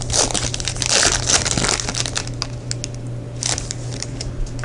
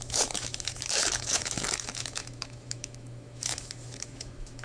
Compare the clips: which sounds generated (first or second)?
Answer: second